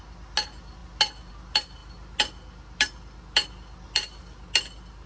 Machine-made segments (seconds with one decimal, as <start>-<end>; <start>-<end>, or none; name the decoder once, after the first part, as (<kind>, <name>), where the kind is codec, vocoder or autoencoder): none